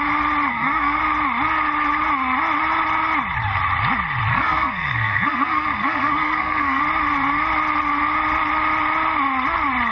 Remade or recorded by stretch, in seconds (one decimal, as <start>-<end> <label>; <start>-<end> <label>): 0.0-0.5 recorded; 0.5-1.0 remade; 1.0-4.3 recorded; 4.3-6.8 remade; 6.8-9.9 recorded